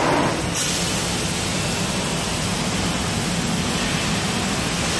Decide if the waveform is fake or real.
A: real